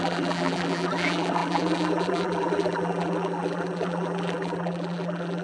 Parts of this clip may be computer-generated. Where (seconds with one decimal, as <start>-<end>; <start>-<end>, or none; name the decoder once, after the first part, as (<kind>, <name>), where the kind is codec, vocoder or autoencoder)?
0.0-5.4 (vocoder, BigVGAN v2)